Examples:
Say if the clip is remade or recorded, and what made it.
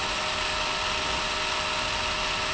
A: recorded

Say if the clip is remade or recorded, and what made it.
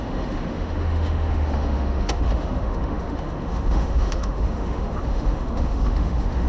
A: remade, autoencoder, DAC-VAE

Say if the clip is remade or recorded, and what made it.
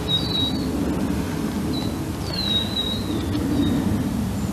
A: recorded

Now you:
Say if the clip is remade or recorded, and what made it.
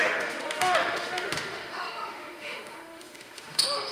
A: remade, autoencoder, DAC-VAE